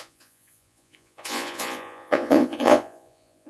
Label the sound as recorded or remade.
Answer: remade